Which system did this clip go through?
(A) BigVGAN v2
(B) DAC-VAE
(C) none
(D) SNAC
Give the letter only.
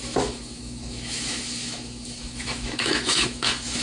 B